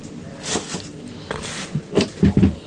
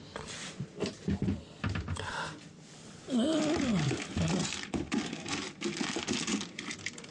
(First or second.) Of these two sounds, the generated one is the second